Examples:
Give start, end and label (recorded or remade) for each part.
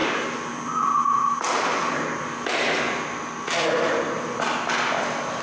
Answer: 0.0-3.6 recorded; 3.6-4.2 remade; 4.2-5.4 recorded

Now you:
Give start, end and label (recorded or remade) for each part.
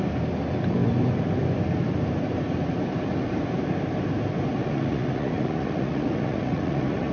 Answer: 0.0-4.6 recorded; 4.6-7.1 remade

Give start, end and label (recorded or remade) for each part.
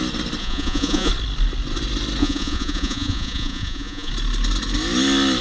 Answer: 0.0-0.4 recorded; 0.4-1.1 remade; 1.1-2.2 recorded; 2.2-4.1 remade; 4.1-5.4 recorded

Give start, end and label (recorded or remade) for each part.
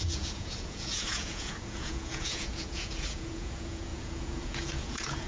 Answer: 0.0-5.3 remade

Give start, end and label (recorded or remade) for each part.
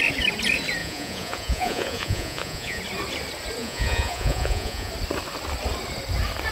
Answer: 0.0-0.8 recorded; 0.8-2.8 remade; 2.8-3.6 recorded; 3.6-4.9 remade; 4.9-6.5 recorded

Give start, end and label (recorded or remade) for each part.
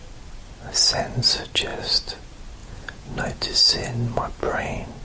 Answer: 0.0-1.7 recorded; 1.7-2.2 remade; 2.2-2.6 recorded; 2.6-4.6 remade; 4.6-5.0 recorded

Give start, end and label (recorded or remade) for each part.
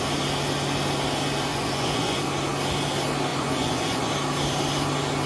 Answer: 0.0-1.5 recorded; 1.5-2.2 remade; 2.2-3.3 recorded; 3.3-4.1 remade; 4.1-5.3 recorded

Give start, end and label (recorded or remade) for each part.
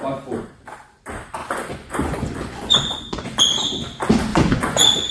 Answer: 0.0-1.4 recorded; 1.4-3.4 remade; 3.4-4.3 recorded; 4.3-5.1 remade